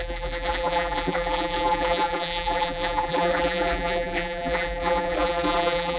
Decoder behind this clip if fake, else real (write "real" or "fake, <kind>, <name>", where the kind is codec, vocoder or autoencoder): fake, vocoder, BigVGAN v2